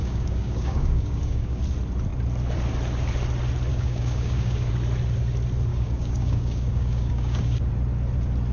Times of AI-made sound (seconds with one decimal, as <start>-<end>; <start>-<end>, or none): 0.0-1.6; 3.7-4.7; 5.7-7.7